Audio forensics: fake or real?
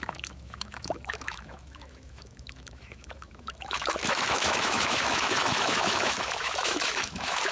fake